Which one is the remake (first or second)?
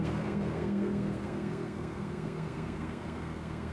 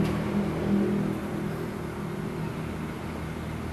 first